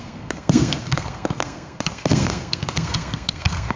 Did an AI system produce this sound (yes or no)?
yes